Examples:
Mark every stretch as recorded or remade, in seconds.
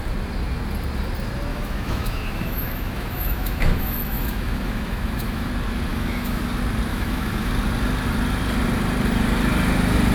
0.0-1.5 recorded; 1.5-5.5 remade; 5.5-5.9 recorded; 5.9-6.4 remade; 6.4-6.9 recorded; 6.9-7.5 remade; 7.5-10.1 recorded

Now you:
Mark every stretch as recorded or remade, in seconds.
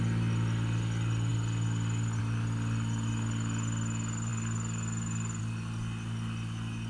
0.0-6.9 recorded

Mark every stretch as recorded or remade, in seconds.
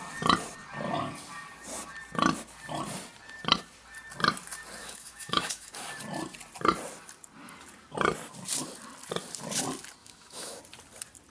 0.0-4.8 recorded; 4.8-5.7 remade; 5.7-10.0 recorded; 10.0-10.6 remade; 10.6-11.3 recorded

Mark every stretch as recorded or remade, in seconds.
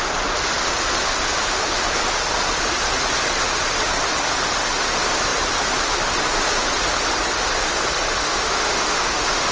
0.0-8.2 recorded; 8.2-9.5 remade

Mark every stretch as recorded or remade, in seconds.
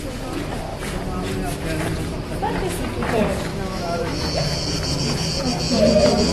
0.0-3.5 recorded; 3.5-4.2 remade; 4.2-6.3 recorded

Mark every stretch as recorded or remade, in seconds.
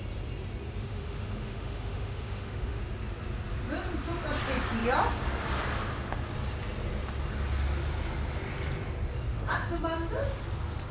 0.0-0.8 recorded; 0.8-2.8 remade; 2.8-9.3 recorded; 9.3-9.8 remade; 9.8-10.9 recorded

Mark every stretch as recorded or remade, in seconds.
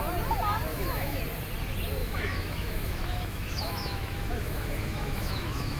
0.0-0.7 recorded; 0.7-1.2 remade; 1.2-2.0 recorded; 2.0-5.8 remade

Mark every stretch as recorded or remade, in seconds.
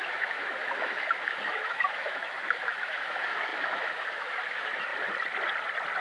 0.0-4.9 remade; 4.9-6.0 recorded